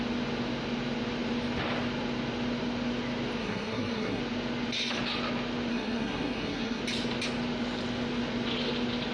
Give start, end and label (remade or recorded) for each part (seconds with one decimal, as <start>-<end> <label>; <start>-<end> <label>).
0.0-3.4 recorded; 3.4-4.2 remade; 4.2-5.7 recorded; 5.7-6.8 remade; 6.8-9.1 recorded